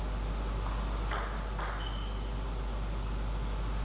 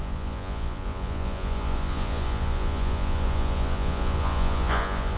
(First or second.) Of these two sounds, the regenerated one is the second